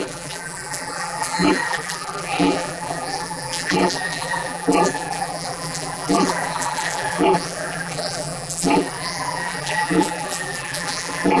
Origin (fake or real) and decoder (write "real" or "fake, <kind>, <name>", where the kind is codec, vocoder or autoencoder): fake, vocoder, BigVGAN v2